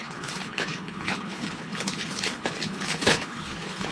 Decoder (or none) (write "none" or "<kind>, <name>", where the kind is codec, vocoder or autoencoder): codec, HILCodec